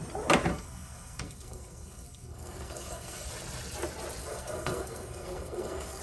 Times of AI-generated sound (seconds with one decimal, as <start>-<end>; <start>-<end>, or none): 0.5-3.3; 4.2-6.0